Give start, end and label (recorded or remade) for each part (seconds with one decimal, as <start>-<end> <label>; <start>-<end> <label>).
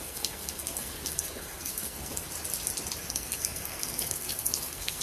0.0-2.3 remade; 2.3-3.1 recorded; 3.1-5.0 remade